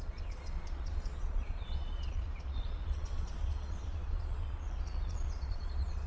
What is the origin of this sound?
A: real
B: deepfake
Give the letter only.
B